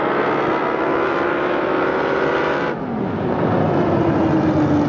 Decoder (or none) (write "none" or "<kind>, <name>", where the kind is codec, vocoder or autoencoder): none